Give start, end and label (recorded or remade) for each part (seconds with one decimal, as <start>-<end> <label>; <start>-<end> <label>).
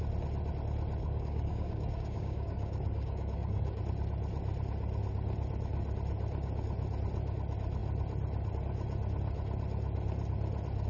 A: 0.0-1.0 recorded; 1.0-3.8 remade; 3.8-10.9 recorded